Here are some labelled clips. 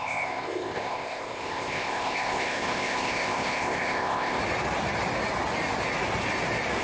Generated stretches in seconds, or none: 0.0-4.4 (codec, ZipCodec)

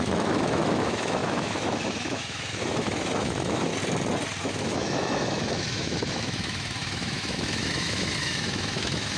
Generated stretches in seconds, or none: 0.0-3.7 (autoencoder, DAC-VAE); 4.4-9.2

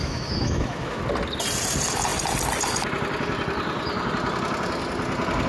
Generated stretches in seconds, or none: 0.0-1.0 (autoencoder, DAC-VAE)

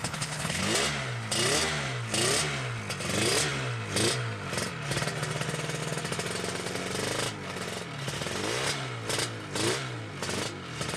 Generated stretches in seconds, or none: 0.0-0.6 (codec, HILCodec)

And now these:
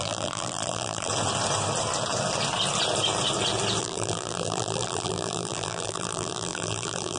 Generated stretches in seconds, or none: 0.0-1.1 (vocoder, BigVGAN v2); 3.8-7.2